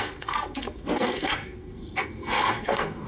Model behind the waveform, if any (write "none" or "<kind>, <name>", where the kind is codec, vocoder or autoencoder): codec, SNAC